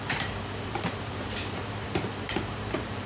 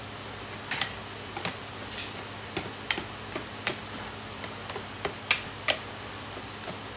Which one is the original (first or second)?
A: second